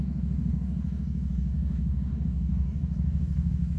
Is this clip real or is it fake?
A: fake